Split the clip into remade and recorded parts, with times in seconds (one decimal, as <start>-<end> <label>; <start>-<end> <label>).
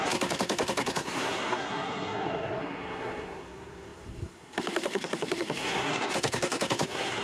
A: 0.0-7.2 remade